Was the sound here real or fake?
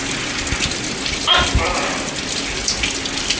real